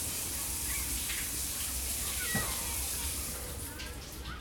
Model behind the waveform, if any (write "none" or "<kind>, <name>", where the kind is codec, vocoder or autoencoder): none